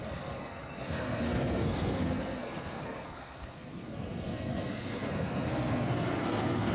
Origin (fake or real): fake